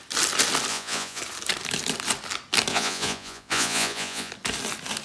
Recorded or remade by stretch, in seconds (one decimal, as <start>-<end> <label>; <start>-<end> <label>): 0.0-0.7 recorded; 0.7-1.2 remade; 1.2-2.7 recorded; 2.7-4.3 remade; 4.3-5.0 recorded